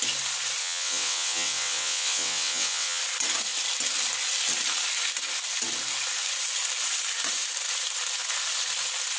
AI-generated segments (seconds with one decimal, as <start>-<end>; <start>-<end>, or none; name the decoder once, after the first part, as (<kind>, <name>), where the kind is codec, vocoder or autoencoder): 0.6-3.0 (vocoder, WaveNeXt)